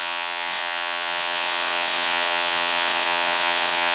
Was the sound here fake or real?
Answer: fake